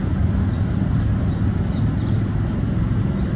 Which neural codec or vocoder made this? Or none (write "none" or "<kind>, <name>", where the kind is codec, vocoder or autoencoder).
none